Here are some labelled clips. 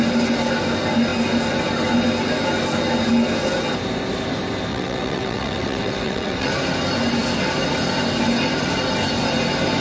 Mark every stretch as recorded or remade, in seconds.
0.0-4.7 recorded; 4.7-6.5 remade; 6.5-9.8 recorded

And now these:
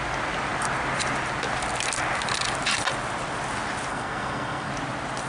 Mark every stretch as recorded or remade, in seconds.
0.0-3.9 recorded; 3.9-4.7 remade; 4.7-5.3 recorded

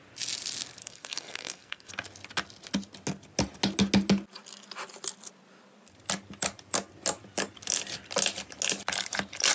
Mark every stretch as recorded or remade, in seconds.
0.0-0.8 recorded; 0.8-1.9 remade; 1.9-9.5 recorded